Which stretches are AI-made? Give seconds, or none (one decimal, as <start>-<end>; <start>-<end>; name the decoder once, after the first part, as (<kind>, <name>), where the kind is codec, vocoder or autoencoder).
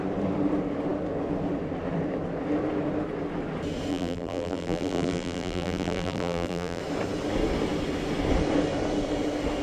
3.9-6.8 (vocoder, BigVGAN v2)